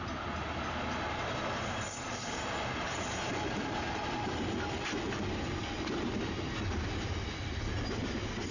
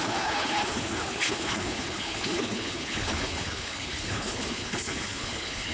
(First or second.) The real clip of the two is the first